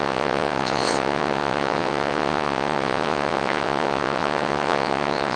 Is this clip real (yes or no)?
no